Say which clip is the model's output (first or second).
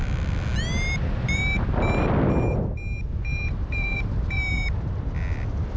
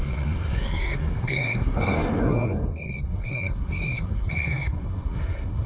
second